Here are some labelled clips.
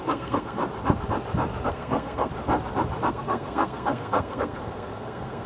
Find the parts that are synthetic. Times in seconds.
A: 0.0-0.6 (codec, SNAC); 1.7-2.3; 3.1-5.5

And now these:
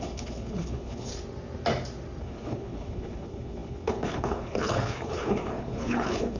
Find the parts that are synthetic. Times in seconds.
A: 0.0-1.1 (codec, HILCodec); 2.2-6.4